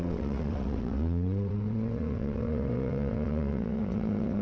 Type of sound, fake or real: fake